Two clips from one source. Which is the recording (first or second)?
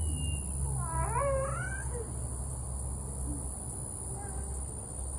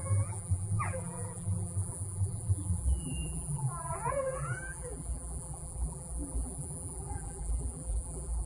first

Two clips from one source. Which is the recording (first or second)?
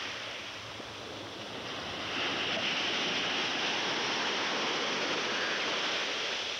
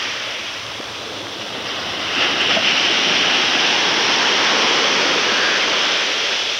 first